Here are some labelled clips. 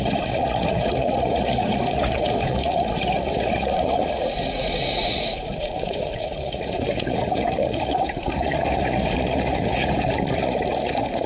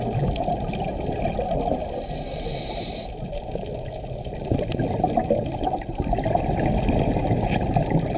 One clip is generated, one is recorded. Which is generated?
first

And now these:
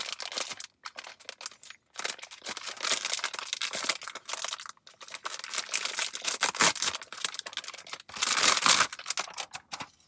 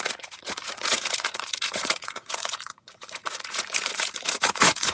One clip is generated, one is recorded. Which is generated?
second